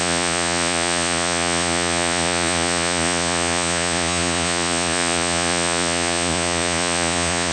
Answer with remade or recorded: remade